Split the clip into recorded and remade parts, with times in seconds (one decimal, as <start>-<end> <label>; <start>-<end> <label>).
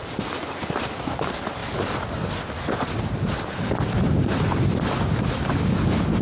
0.0-6.2 recorded